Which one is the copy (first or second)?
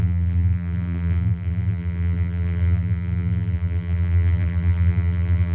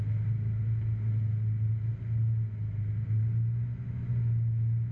first